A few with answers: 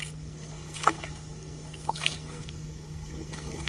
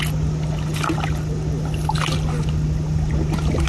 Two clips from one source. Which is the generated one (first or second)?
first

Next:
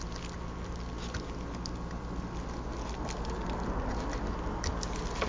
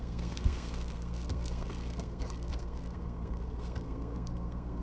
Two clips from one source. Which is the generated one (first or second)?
second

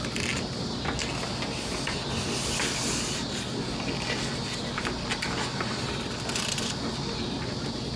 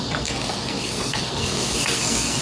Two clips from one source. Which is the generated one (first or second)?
second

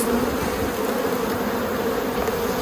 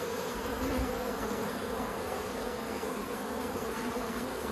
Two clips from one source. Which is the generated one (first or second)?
second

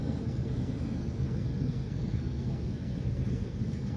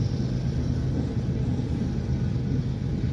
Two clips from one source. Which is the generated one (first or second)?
first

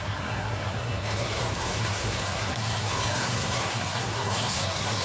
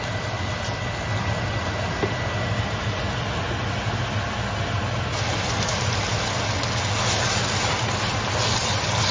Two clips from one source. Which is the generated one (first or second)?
first